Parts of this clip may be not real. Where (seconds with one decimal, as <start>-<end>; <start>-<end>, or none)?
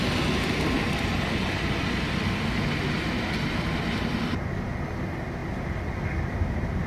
none